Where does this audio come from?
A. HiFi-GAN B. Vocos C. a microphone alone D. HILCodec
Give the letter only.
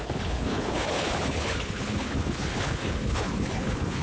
D